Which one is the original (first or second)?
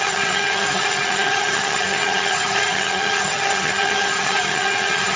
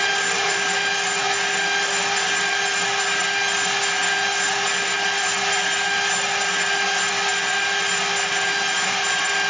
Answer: second